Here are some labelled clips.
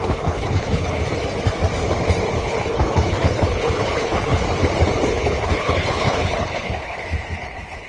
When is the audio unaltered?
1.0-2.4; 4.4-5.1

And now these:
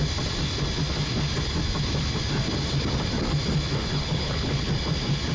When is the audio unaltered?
0.0-3.9; 4.7-5.3

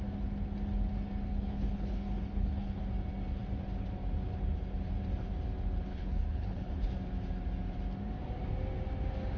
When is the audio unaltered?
0.0-1.3; 2.8-5.9; 6.9-9.4

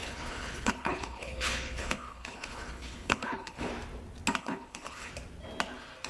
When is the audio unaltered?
3.7-4.4; 5.1-6.1

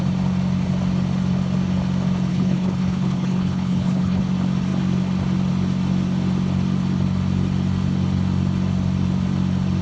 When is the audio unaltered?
0.0-2.3; 4.2-9.8

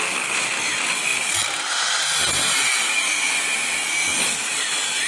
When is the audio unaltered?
0.0-5.1

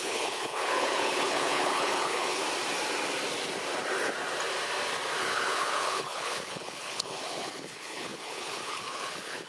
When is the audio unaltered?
2.4-5.2

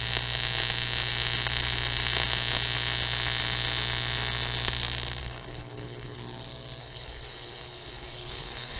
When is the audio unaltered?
0.0-5.2; 6.2-6.8